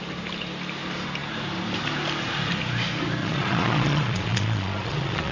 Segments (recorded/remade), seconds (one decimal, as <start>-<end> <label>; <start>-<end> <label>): 0.0-3.2 recorded; 3.2-5.3 remade